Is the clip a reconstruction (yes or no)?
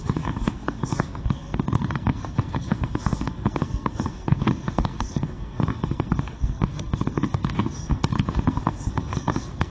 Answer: yes